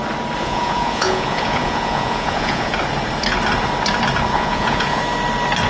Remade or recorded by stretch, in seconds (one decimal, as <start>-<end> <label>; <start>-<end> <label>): 0.0-0.4 recorded; 0.4-2.7 remade; 2.7-4.3 recorded; 4.3-5.0 remade; 5.0-5.7 recorded

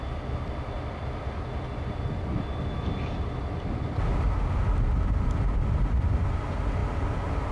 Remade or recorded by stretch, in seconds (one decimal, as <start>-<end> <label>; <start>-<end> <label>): 0.0-7.5 recorded

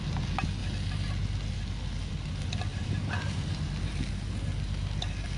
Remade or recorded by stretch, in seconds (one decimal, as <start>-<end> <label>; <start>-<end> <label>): 0.0-2.7 recorded; 2.7-3.6 remade; 3.6-5.4 recorded

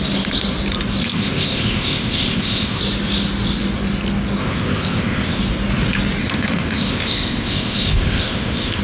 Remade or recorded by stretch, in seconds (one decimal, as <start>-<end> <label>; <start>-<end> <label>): 0.0-1.0 recorded; 1.0-2.8 remade; 2.8-4.4 recorded; 4.4-5.4 remade; 5.4-6.2 recorded; 6.2-8.8 remade

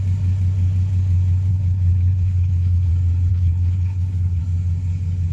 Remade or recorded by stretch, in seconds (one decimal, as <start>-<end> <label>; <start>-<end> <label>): 0.0-1.5 recorded; 1.5-2.9 remade; 2.9-3.3 recorded; 3.3-4.4 remade; 4.4-5.3 recorded

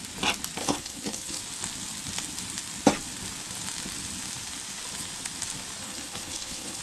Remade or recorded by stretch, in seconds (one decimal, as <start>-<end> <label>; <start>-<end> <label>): 0.0-0.6 recorded; 0.6-1.4 remade; 1.4-5.8 recorded; 5.8-6.8 remade

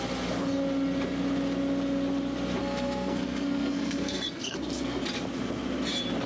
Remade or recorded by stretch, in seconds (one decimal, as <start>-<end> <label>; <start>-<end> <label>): 0.0-2.6 recorded; 2.6-5.0 remade; 5.0-6.3 recorded

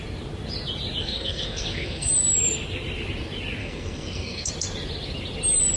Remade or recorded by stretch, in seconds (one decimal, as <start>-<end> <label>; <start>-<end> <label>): 0.0-1.0 recorded; 1.0-2.1 remade; 2.1-3.6 recorded; 3.6-4.5 remade; 4.5-5.8 recorded